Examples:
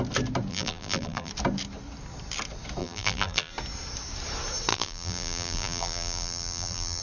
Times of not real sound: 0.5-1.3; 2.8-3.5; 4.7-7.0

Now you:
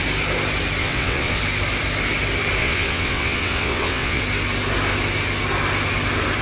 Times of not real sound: 0.8-1.4; 2.6-4.2

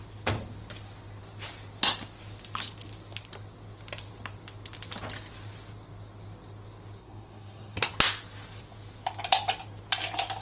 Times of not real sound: 7.0-7.9

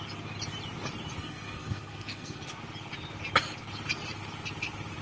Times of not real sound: 1.2-2.6

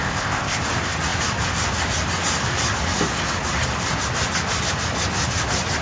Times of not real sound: 0.0-0.6